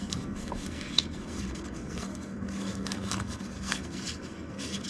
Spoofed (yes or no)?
yes